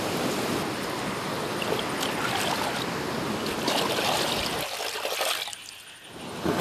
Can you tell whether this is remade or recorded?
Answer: recorded